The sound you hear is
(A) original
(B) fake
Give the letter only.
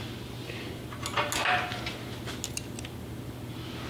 A